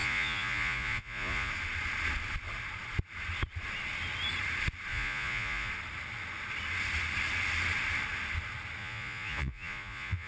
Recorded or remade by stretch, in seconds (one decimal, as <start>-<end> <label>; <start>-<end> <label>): 0.0-1.5 remade; 1.5-4.9 recorded; 4.9-5.7 remade; 5.7-8.8 recorded; 8.8-10.3 remade